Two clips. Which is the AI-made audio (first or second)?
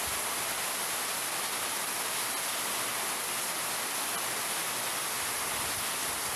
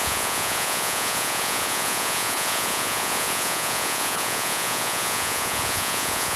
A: second